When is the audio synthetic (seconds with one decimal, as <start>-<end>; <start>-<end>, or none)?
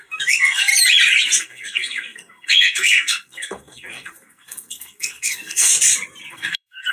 0.0-0.7; 1.4-5.7; 6.3-6.9